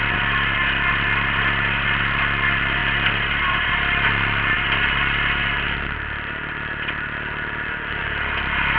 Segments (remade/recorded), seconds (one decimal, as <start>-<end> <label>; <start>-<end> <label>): 0.0-8.8 recorded